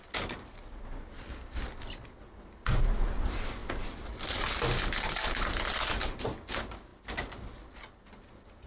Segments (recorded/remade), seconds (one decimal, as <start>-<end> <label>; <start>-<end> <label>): 0.0-8.7 recorded